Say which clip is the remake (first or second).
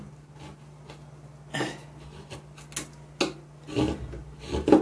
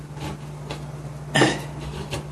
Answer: second